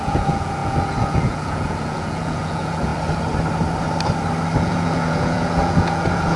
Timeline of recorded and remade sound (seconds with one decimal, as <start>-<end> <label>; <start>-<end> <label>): 0.0-2.9 remade; 2.9-4.6 recorded; 4.6-6.4 remade